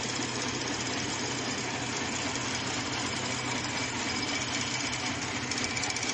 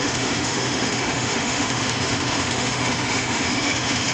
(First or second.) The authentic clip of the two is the first